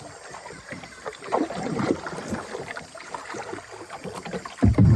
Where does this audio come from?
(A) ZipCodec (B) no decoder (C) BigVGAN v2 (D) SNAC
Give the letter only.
C